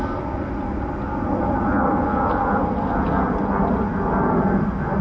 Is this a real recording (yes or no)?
yes